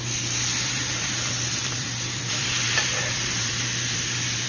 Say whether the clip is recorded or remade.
remade